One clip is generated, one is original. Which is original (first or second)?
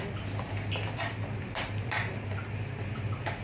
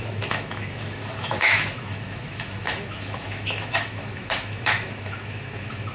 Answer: first